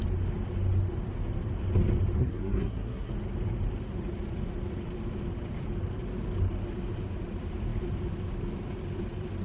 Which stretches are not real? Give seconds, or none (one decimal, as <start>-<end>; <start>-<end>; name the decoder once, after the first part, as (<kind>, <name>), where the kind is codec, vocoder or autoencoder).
2.2-3.1 (codec, SNAC)